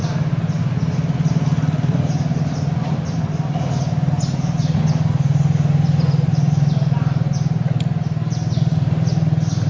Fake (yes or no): no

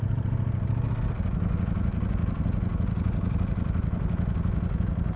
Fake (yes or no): no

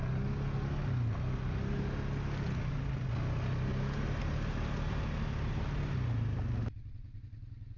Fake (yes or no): no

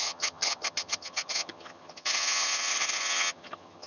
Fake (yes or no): yes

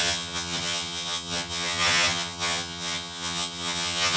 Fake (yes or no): yes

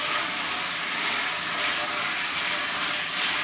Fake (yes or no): no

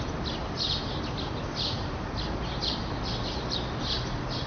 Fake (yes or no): no